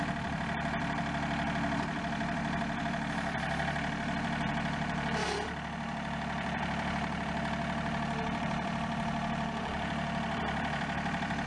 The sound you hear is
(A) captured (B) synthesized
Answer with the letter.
B